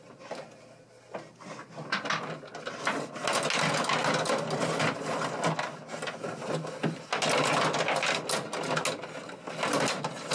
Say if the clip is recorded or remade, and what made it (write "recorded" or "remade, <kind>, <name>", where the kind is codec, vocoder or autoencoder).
recorded